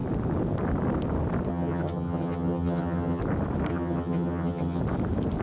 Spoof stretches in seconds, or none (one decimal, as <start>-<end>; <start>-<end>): 1.5-3.2; 3.7-4.8